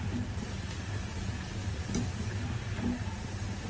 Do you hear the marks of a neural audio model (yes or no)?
no